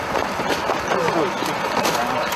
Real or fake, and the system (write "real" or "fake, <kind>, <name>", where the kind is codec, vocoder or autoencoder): real